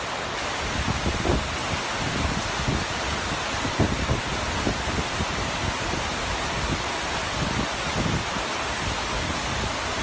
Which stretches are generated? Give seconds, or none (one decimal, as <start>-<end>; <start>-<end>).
none